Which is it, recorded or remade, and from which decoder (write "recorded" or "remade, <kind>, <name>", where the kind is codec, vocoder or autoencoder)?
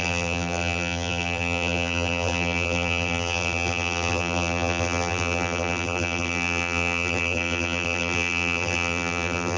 remade, vocoder, BigVGAN v2